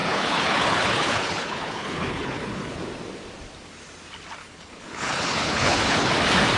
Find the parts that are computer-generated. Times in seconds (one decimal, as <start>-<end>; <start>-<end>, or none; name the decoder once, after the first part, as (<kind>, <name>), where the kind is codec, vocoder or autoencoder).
0.0-2.8 (codec, HILCodec); 4.4-6.1